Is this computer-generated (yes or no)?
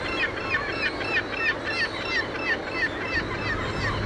no